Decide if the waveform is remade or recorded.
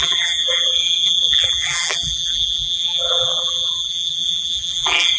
remade